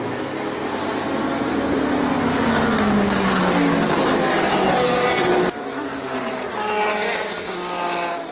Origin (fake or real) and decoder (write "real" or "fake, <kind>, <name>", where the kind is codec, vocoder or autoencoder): real